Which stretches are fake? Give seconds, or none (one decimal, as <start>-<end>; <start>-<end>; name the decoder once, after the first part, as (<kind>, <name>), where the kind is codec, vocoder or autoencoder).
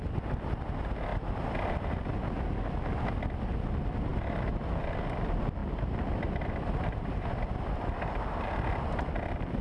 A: 5.6-9.1 (vocoder, BigVGAN v2)